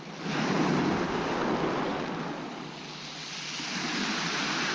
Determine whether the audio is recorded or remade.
recorded